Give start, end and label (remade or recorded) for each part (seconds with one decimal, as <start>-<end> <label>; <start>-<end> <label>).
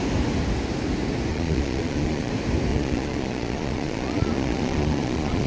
0.0-1.3 recorded; 1.3-2.3 remade; 2.3-2.7 recorded; 2.7-5.5 remade